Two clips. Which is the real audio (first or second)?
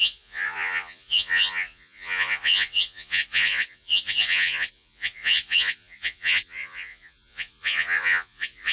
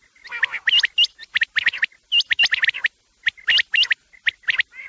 second